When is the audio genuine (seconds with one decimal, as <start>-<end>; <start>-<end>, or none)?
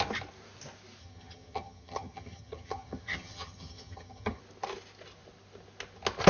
0.0-1.0; 4.4-6.3